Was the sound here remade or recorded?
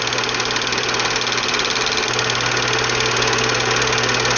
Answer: recorded